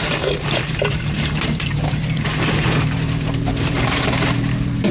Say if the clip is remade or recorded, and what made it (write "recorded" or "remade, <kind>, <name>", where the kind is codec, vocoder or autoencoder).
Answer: remade, vocoder, BigVGAN v2